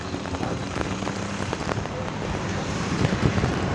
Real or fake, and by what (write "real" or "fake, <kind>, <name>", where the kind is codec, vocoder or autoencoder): fake, vocoder, BigVGAN v2